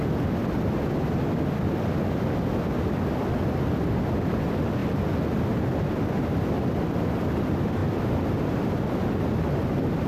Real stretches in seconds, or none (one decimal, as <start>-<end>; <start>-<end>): 0.0-10.1